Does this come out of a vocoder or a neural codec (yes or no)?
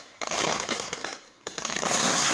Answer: yes